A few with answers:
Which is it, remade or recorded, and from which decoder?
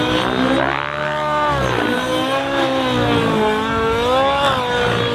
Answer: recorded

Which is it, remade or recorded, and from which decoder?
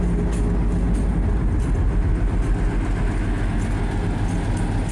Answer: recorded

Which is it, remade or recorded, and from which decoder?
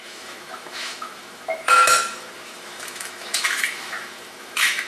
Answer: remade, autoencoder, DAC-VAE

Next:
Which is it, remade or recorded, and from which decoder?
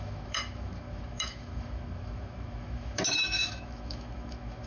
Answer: remade, autoencoder, DAC-VAE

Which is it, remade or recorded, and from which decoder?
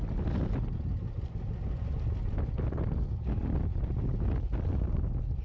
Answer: recorded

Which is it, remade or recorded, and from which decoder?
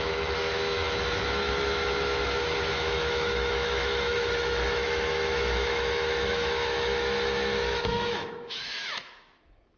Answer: remade, autoencoder, DAC-VAE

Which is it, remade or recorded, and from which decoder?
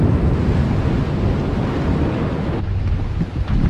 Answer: recorded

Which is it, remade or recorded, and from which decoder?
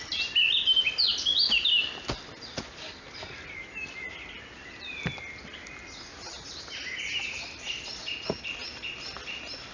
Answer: recorded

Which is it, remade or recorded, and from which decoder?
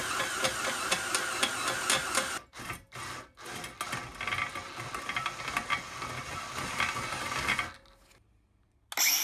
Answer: recorded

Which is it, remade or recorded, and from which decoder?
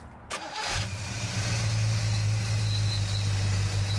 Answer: recorded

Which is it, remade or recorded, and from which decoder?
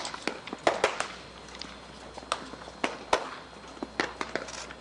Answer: recorded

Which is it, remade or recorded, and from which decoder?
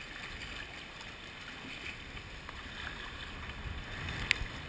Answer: recorded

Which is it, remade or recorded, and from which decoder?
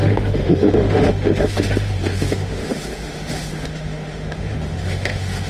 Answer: remade, autoencoder, DAC-VAE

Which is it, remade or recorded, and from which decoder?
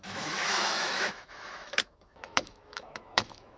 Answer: remade, autoencoder, DAC-VAE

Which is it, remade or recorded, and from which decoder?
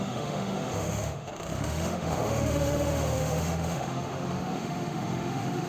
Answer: remade, autoencoder, DAC-VAE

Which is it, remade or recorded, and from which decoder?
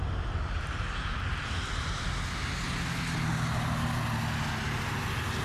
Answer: recorded